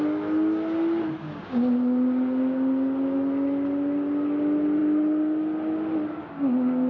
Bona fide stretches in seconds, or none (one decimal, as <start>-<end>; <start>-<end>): 0.0-6.9